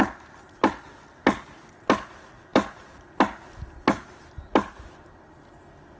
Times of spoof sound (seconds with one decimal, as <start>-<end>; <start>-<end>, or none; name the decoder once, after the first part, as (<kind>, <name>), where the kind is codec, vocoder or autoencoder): none